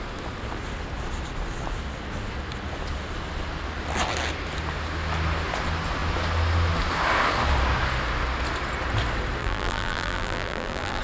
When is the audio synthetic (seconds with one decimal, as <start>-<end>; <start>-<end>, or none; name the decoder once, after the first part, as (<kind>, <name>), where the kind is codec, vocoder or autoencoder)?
9.4-11.0 (vocoder, BigVGAN v2)